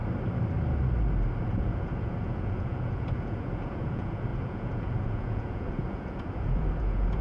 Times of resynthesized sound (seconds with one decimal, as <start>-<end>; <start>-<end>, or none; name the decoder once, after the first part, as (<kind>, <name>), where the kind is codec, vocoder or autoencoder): 1.5-7.2 (vocoder, Vocos)

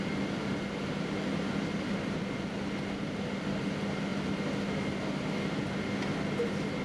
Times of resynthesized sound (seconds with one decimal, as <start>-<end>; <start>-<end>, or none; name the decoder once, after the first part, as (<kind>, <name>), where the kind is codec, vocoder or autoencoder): none